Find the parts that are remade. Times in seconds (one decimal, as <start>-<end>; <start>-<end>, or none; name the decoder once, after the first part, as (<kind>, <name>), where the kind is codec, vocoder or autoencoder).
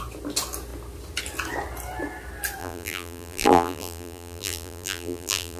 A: 2.6-5.6 (vocoder, BigVGAN v2)